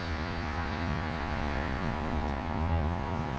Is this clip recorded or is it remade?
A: remade